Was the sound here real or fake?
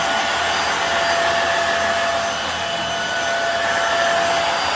real